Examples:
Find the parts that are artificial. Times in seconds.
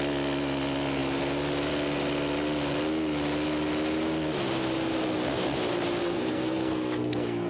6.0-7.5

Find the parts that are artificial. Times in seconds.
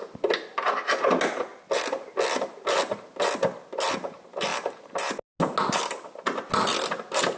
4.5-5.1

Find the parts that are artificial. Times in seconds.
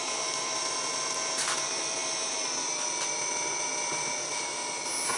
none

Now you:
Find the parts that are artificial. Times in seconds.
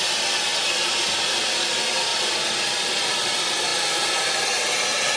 none